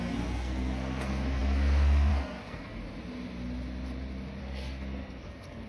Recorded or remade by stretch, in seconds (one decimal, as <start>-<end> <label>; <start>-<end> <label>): 0.0-2.8 remade; 2.8-4.4 recorded; 4.4-5.7 remade